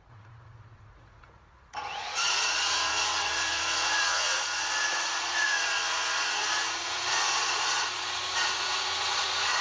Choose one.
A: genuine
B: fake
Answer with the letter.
B